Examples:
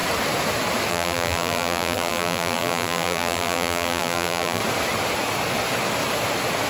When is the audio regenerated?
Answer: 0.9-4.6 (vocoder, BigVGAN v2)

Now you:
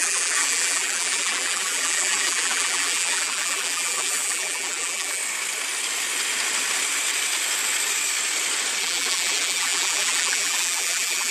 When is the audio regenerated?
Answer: 0.0-5.2 (vocoder, BigVGAN v2); 8.8-11.3

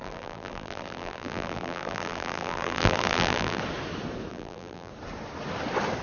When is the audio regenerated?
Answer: 0.0-3.6 (vocoder, BigVGAN v2); 4.3-4.9